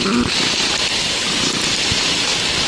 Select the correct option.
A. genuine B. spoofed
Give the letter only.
B